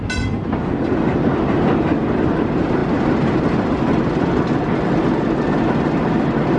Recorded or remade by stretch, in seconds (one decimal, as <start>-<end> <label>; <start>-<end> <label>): 0.0-6.6 recorded